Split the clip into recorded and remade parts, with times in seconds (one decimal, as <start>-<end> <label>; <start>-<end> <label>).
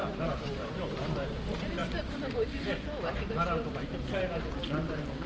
0.0-5.3 remade